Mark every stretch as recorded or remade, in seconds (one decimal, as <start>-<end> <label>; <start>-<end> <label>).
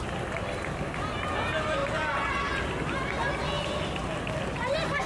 0.0-5.1 recorded